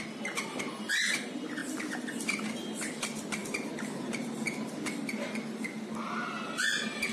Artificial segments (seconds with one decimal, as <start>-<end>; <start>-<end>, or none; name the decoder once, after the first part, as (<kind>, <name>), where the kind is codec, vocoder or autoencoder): none